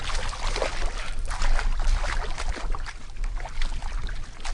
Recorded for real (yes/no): yes